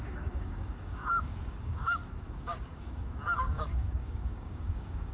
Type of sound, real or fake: fake